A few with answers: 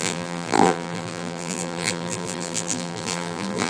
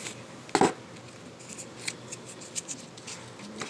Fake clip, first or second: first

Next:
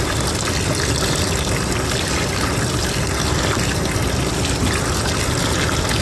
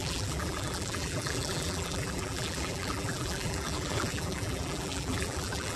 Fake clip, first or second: second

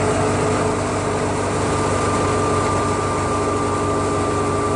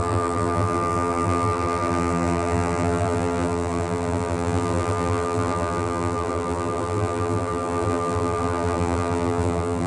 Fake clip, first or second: second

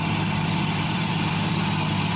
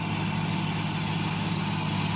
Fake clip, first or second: first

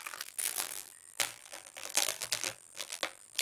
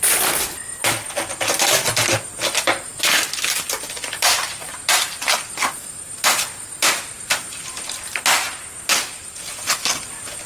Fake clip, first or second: first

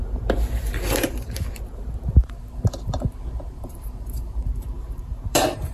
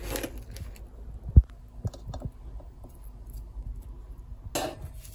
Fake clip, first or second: first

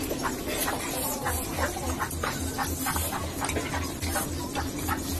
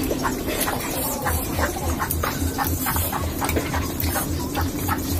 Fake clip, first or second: second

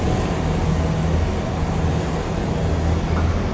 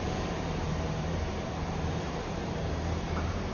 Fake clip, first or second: second